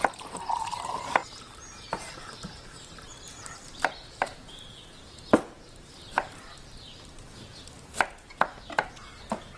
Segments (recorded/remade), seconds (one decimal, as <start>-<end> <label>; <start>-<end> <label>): 0.0-1.2 remade; 1.2-2.2 recorded; 2.2-4.3 remade; 4.3-5.0 recorded; 5.0-7.5 remade; 7.5-9.6 recorded